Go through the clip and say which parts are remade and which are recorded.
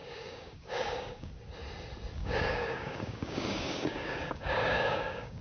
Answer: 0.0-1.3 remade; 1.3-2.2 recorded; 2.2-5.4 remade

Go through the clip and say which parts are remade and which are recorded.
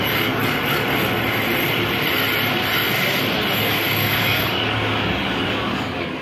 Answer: 0.0-0.4 remade; 0.4-3.6 recorded; 3.6-6.2 remade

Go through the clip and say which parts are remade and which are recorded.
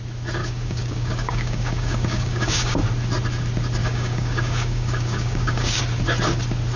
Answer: 0.0-0.4 recorded; 0.4-2.8 remade; 2.8-3.8 recorded; 3.8-5.8 remade; 5.8-6.8 recorded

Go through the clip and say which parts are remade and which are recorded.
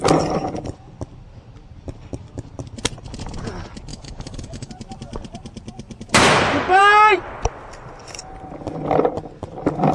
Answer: 0.0-3.9 recorded; 3.9-4.7 remade; 4.7-9.9 recorded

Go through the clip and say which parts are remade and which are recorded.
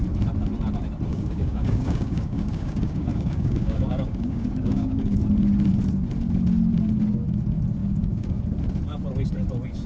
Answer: 0.0-1.1 recorded; 1.1-5.2 remade; 5.2-7.8 recorded; 7.8-8.4 remade; 8.4-9.9 recorded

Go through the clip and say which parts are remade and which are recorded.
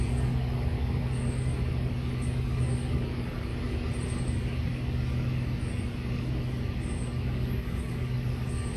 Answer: 0.0-3.5 remade; 3.5-4.2 recorded; 4.2-8.8 remade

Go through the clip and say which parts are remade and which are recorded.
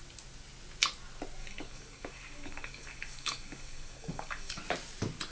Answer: 0.0-1.4 recorded; 1.4-4.6 remade; 4.6-5.3 recorded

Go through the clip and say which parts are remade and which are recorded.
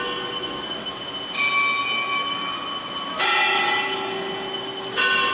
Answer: 0.0-5.3 recorded